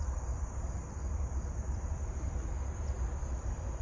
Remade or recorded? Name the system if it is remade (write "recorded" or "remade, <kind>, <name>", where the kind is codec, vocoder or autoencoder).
remade, vocoder, BigVGAN v2